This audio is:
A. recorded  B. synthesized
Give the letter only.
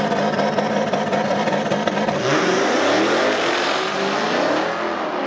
A